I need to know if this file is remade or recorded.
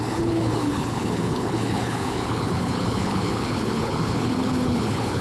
remade